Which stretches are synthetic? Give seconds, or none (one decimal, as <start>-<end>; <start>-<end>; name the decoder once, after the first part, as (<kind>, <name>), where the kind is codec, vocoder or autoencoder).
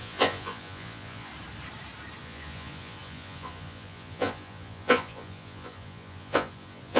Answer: 0.0-1.3 (vocoder, Vocos); 2.2-7.0